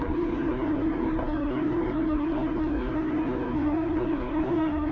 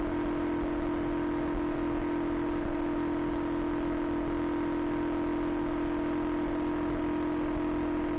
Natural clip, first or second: second